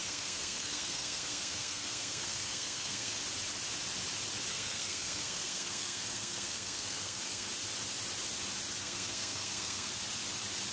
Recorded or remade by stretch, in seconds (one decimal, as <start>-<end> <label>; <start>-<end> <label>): 0.0-3.1 remade; 3.1-4.5 recorded; 4.5-7.5 remade; 7.5-8.8 recorded; 8.8-9.9 remade; 9.9-10.7 recorded